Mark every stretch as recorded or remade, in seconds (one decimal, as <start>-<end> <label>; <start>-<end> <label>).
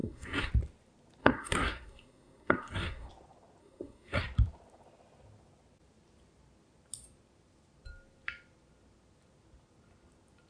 0.0-0.5 remade; 0.5-1.2 recorded; 1.2-3.1 remade; 3.1-3.6 recorded; 3.6-4.2 remade; 4.2-10.5 recorded